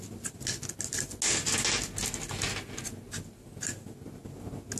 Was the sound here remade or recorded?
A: recorded